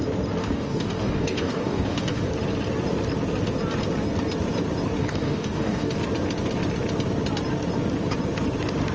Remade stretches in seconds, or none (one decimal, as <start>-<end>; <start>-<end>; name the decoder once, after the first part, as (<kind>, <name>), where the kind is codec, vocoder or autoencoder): 0.4-2.3 (codec, DAC); 5.0-5.9